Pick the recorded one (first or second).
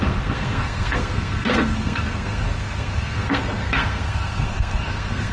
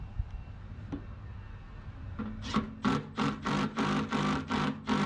second